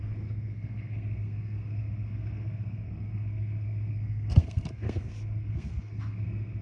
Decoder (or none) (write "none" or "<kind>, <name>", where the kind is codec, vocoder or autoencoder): codec, SNAC